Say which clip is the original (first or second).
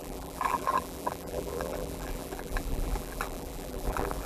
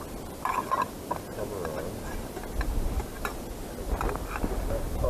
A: second